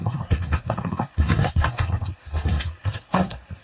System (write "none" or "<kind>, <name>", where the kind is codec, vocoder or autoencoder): codec, SNAC